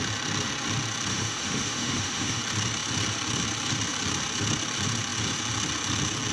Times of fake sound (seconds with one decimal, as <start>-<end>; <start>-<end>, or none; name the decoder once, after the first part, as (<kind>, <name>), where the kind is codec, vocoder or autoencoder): 1.1-2.4 (autoencoder, DAC-VAE)